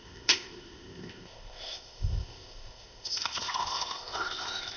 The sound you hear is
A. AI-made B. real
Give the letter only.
A